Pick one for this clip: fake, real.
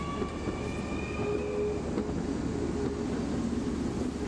real